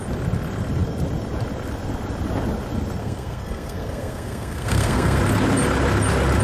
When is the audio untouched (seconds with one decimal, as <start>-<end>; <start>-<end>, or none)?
0.0-3.0; 5.2-6.4